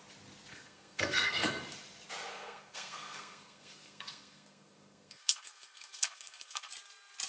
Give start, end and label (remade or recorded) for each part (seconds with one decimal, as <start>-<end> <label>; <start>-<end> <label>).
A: 0.0-0.5 recorded; 0.5-1.5 remade; 1.5-2.3 recorded; 2.3-6.7 remade; 6.7-7.3 recorded